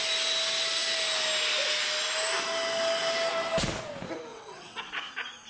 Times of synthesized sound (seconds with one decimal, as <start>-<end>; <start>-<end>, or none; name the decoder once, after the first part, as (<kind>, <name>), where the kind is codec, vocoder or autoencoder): 4.3-4.9 (vocoder, WaveNeXt)